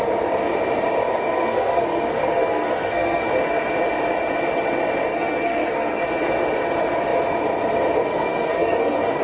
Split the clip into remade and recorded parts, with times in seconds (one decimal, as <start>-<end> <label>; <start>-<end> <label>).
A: 0.0-1.1 recorded; 1.1-3.3 remade; 3.3-5.1 recorded; 5.1-6.0 remade; 6.0-8.1 recorded; 8.1-9.2 remade